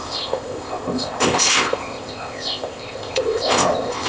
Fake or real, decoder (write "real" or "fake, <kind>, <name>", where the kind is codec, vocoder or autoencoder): fake, codec, ZipCodec